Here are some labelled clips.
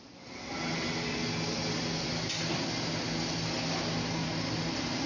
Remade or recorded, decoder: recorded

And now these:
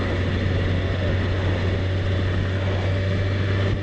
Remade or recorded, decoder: recorded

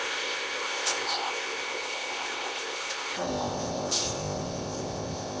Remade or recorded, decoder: remade, codec, ZipCodec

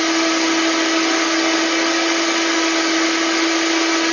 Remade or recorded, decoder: recorded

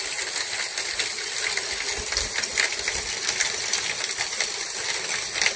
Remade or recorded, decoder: recorded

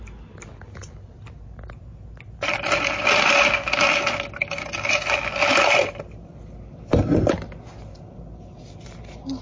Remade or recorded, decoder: recorded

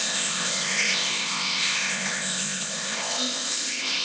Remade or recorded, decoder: remade, codec, ZipCodec